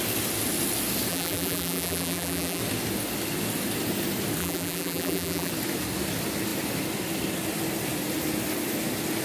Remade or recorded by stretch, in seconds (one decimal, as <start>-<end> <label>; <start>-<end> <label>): 0.0-1.1 recorded; 1.1-2.6 remade; 2.6-4.4 recorded; 4.4-5.5 remade; 5.5-9.2 recorded

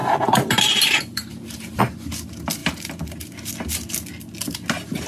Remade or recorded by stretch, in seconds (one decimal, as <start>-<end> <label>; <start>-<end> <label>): 0.0-1.8 remade; 1.8-2.6 recorded; 2.6-3.5 remade; 3.5-5.1 recorded

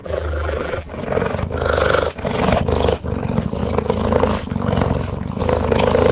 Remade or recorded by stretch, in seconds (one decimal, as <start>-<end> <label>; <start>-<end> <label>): 0.0-0.9 remade; 0.9-6.1 recorded

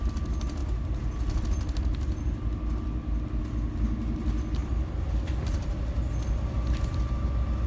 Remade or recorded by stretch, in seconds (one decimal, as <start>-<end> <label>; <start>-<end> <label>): 0.0-4.6 recorded; 4.6-6.1 remade; 6.1-7.7 recorded

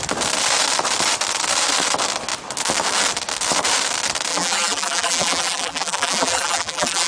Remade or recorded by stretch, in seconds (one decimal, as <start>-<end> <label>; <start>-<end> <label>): 0.0-4.3 recorded; 4.3-7.1 remade

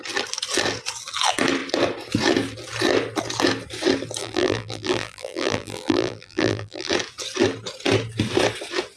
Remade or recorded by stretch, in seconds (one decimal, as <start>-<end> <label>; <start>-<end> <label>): 0.0-4.2 recorded; 4.2-6.9 remade; 6.9-9.0 recorded

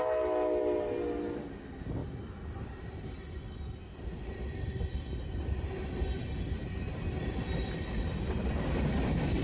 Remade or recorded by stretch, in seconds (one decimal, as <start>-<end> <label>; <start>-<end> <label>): 0.0-2.0 recorded; 2.0-5.7 remade; 5.7-6.6 recorded; 6.6-8.4 remade; 8.4-9.4 recorded

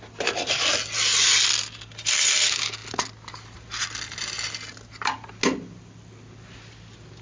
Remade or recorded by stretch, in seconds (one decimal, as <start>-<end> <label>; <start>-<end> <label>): 0.0-7.2 recorded